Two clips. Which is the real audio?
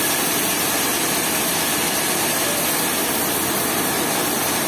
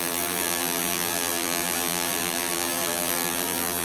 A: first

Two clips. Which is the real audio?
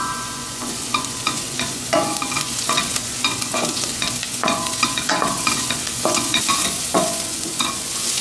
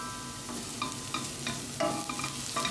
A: second